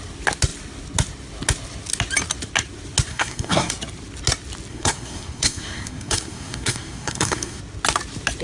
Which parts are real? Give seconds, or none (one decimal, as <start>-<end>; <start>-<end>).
0.0-3.1; 3.7-4.7; 7.6-8.4